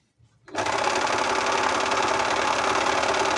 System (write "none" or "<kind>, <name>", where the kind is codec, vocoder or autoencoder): none